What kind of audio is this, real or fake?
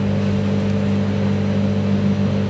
real